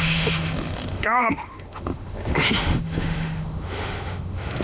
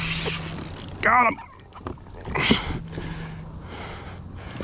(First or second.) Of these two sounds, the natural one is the second